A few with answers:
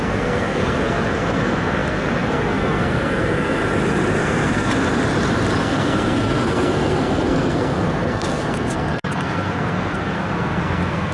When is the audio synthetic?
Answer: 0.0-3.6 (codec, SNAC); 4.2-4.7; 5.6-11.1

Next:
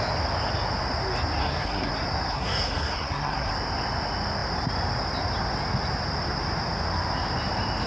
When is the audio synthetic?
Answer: 1.4-1.9 (codec, SNAC); 2.3-3.5

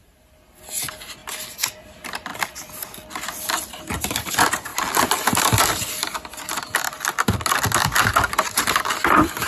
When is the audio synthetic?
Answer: none

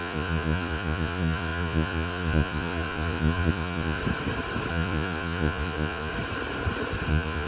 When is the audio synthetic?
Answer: 0.0-4.0 (vocoder, Vocos); 4.7-6.1; 7.1-7.5